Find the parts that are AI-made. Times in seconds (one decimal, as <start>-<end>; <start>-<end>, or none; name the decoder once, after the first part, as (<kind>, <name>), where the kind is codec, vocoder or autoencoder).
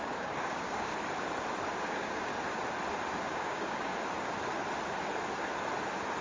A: 0.0-0.9 (codec, DAC); 1.8-2.3; 3.3-3.9